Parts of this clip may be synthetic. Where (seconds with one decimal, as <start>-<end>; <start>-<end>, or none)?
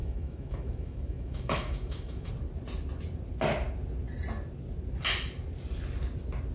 0.0-2.3